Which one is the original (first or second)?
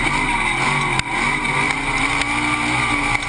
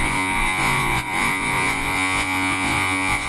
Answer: first